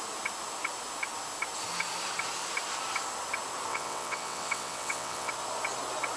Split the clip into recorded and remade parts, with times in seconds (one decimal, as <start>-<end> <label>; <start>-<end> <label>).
0.0-3.7 recorded; 3.7-5.3 remade; 5.3-6.2 recorded